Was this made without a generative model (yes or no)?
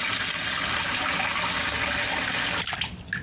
yes